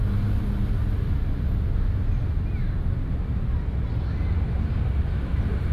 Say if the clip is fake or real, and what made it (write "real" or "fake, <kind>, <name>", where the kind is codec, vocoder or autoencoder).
real